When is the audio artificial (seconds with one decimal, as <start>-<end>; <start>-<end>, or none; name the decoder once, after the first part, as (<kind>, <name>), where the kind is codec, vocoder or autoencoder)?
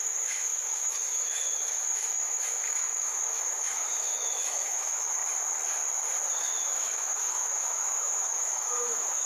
0.0-5.2 (autoencoder, DAC-VAE); 6.4-9.3